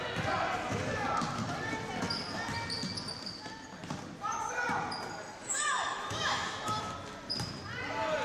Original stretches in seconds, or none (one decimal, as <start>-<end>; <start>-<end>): 0.0-5.4; 6.9-8.2